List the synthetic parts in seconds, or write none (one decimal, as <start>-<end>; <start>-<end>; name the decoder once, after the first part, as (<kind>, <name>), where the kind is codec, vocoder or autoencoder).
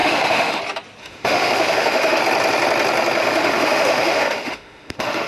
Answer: 0.0-0.6 (autoencoder, DAC-VAE); 1.0-2.2; 3.2-5.3